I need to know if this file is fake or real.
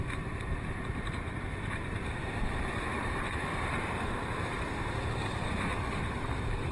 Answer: fake